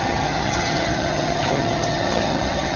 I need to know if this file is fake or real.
fake